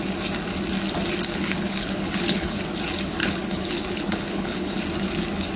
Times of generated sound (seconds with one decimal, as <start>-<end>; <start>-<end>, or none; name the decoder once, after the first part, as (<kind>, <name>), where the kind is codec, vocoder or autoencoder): 1.3-2.6 (codec, HILCodec); 3.2-4.8